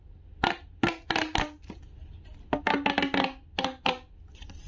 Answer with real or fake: real